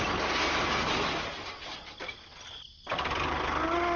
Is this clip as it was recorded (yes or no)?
yes